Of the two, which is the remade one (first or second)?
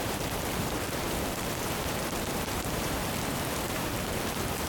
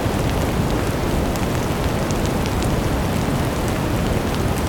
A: first